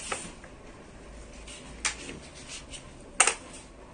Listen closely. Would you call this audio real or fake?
real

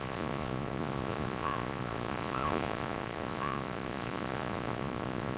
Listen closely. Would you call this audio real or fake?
fake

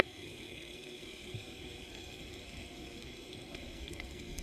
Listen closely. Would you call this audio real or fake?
fake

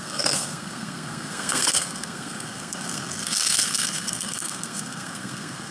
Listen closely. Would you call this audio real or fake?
fake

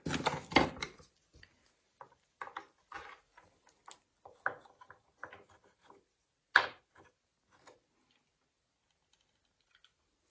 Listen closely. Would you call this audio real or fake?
real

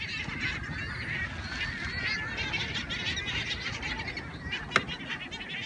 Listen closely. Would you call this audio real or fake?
real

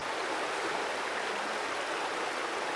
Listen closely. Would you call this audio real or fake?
real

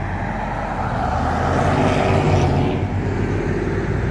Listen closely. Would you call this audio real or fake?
real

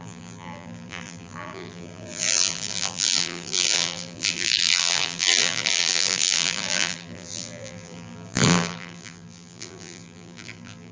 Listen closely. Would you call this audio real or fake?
fake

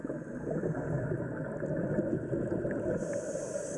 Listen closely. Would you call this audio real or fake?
real